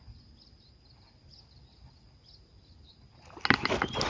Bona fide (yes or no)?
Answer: yes